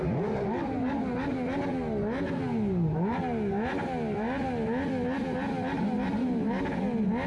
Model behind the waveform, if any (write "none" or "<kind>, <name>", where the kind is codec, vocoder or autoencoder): none